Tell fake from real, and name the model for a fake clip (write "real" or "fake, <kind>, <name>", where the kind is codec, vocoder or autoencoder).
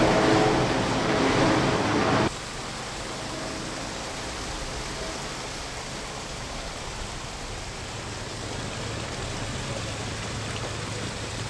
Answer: real